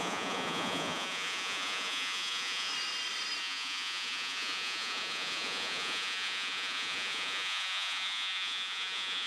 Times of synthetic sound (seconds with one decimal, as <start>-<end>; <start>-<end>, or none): 0.0-2.7; 3.4-9.3